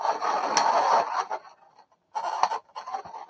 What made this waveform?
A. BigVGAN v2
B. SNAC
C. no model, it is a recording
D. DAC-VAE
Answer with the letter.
C